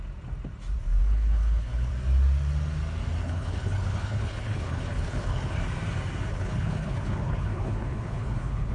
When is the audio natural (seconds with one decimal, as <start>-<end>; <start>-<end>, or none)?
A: 0.0-1.0; 1.9-3.2; 5.6-6.3